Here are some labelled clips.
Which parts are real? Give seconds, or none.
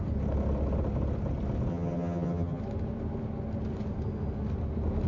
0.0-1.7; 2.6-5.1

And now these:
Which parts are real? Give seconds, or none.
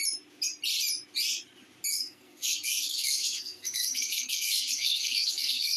0.0-1.9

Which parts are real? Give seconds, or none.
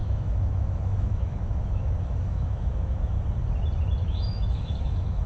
3.2-4.0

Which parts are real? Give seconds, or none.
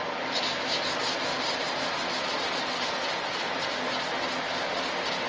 0.0-5.3